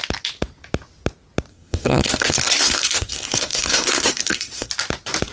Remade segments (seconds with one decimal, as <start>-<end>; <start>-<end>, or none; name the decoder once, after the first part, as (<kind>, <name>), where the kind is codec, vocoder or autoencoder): 1.5-4.7 (codec, SNAC)